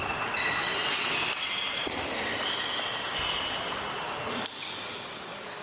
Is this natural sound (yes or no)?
yes